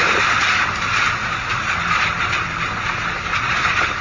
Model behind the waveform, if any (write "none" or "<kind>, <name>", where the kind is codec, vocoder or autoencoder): none